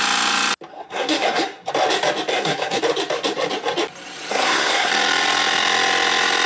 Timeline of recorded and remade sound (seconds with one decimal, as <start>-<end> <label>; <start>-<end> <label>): 0.0-0.7 recorded; 0.7-1.7 remade; 1.7-2.3 recorded; 2.3-2.8 remade; 2.8-4.3 recorded; 4.3-4.9 remade; 4.9-6.5 recorded